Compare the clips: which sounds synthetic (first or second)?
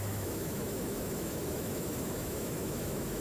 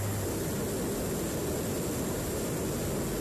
first